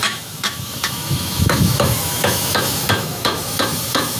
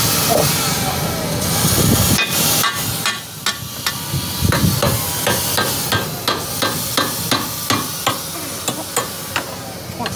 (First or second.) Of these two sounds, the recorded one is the second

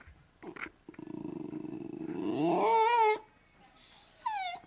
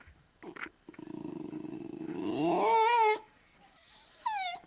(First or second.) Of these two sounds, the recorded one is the first